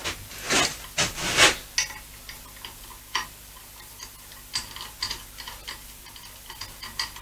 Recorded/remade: recorded